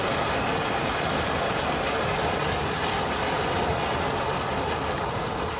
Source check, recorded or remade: recorded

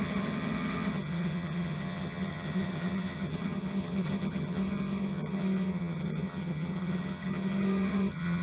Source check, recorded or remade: remade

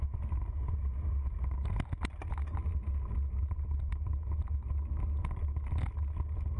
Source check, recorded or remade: recorded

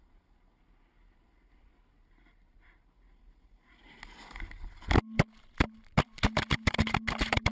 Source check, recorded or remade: recorded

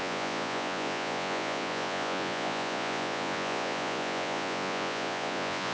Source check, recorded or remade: remade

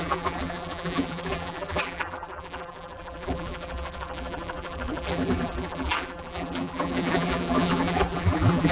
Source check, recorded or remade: remade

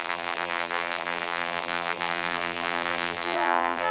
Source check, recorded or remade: remade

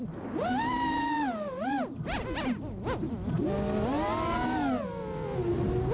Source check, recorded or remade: recorded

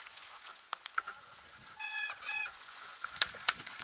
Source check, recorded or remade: remade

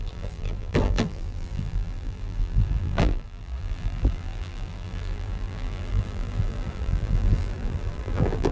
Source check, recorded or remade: remade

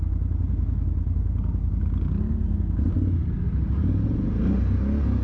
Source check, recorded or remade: recorded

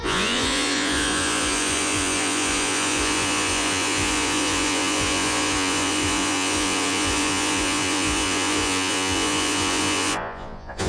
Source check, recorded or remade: remade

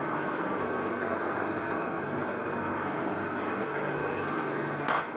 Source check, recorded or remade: remade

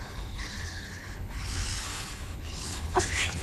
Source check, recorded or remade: remade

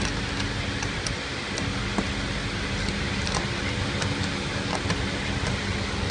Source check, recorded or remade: recorded